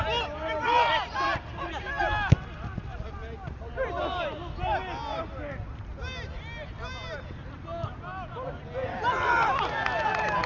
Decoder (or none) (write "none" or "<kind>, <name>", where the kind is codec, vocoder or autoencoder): none